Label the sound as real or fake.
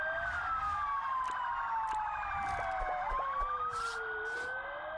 real